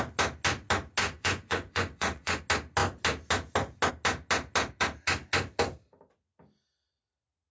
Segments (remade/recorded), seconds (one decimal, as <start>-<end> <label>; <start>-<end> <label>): 0.0-1.0 recorded; 1.0-2.4 remade; 2.4-7.5 recorded